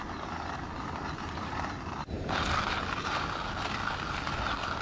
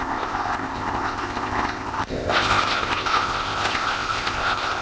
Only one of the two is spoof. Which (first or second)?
second